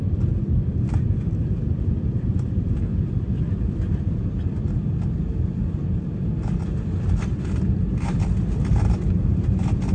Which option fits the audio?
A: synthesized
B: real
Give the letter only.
B